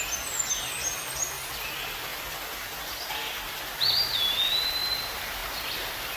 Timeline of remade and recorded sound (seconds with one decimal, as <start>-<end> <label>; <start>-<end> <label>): 0.0-6.2 recorded